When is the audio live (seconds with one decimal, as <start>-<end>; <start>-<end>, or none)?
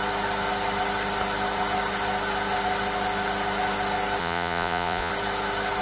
0.0-4.2; 5.1-5.8